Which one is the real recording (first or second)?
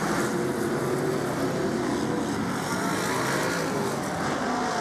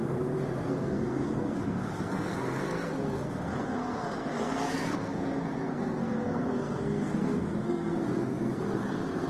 first